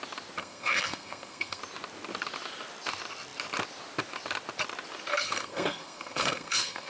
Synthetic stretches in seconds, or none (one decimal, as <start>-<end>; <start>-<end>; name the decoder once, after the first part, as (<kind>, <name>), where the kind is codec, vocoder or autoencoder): 0.4-1.6 (codec, SNAC); 5.1-6.9